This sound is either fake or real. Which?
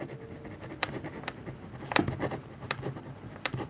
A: real